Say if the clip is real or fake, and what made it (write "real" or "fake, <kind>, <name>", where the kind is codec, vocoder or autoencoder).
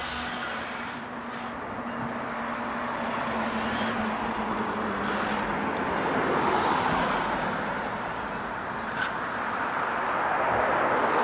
real